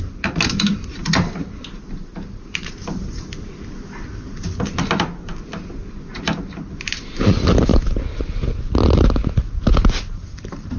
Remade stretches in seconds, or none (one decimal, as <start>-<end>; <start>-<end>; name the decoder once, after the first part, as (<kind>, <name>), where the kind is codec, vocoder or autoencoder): none